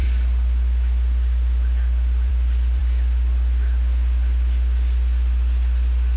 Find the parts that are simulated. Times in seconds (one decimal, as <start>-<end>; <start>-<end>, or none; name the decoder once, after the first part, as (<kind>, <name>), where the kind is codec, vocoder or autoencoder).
none